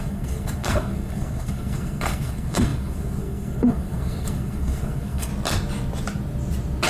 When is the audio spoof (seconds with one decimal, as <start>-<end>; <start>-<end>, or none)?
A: 0.0-5.3